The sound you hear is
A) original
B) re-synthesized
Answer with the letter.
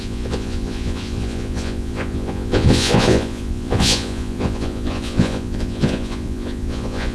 B